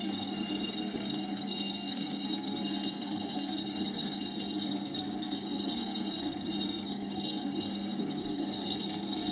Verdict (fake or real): fake